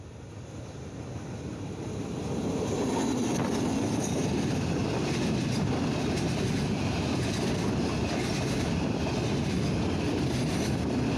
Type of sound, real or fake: real